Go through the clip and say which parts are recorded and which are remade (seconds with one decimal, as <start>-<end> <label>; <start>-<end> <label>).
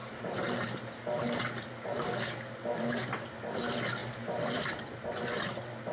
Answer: 0.0-2.1 remade; 2.1-4.0 recorded; 4.0-4.8 remade; 4.8-5.9 recorded